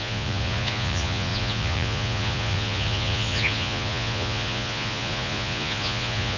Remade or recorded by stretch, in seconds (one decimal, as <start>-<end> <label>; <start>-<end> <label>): 0.0-6.4 remade